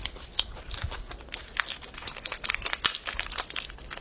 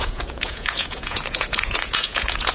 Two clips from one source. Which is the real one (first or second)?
first